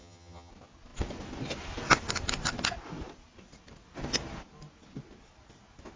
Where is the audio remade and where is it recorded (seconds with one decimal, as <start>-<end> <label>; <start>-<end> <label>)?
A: 0.0-0.5 remade; 0.5-6.0 recorded